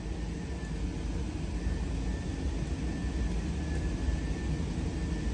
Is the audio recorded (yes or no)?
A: yes